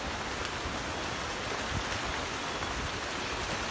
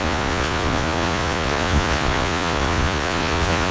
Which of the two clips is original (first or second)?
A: first